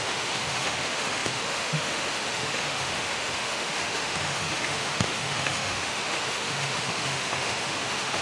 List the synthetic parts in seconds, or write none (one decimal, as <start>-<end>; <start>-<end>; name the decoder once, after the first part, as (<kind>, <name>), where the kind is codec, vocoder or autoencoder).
0.0-8.2 (autoencoder, DAC-VAE)